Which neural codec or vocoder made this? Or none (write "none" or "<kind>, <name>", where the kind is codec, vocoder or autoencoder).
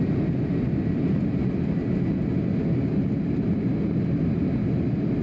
none